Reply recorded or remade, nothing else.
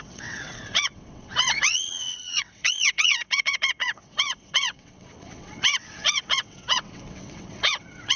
remade